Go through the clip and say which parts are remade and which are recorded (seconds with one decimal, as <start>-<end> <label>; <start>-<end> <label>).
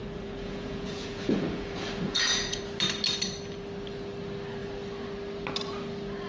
0.0-2.6 remade; 2.6-6.3 recorded